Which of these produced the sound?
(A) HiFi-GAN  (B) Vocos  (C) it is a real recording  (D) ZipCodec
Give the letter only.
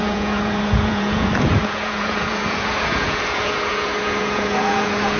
B